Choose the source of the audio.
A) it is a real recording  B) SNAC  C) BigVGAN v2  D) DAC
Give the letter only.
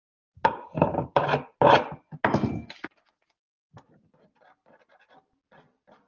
A